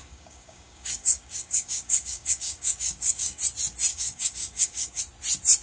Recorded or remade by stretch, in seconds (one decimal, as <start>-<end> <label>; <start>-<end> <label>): 0.0-3.4 remade; 3.4-3.9 recorded; 3.9-5.0 remade; 5.0-5.6 recorded